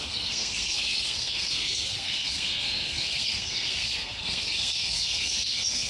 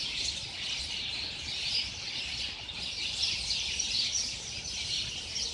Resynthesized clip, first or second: first